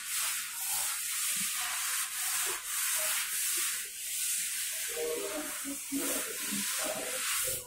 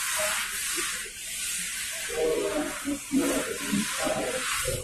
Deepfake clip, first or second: second